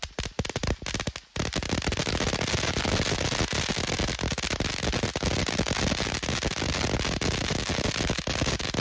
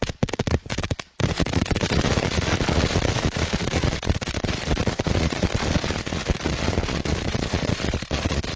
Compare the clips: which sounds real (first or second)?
first